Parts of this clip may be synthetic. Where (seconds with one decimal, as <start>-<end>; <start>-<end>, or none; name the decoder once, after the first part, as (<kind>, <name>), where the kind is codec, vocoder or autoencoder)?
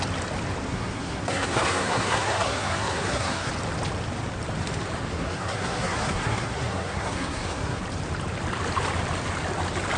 0.7-3.5 (codec, SNAC); 5.1-7.8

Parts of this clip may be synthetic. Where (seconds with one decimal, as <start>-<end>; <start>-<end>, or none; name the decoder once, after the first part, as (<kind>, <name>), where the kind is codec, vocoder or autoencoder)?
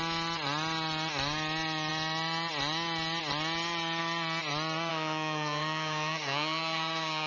4.9-7.3 (codec, SNAC)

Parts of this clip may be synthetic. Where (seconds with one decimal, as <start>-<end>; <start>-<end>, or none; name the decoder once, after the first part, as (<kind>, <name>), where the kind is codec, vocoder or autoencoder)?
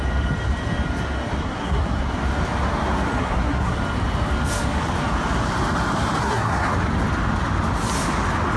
1.4-2.1 (codec, SNAC); 3.2-3.8; 6.2-6.7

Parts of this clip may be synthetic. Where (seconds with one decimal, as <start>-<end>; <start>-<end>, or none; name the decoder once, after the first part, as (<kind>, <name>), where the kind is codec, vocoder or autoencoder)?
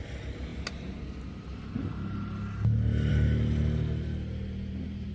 none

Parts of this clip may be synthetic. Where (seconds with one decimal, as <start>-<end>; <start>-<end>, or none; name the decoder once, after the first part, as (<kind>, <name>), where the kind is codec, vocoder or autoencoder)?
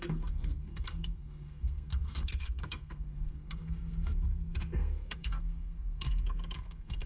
0.0-7.1 (codec, SNAC)